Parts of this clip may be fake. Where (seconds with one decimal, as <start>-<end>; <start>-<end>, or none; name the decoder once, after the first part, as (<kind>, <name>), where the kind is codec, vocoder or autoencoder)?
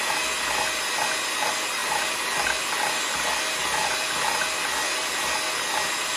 none